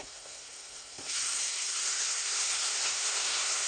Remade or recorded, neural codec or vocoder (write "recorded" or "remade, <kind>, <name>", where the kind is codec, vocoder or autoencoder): remade, codec, SNAC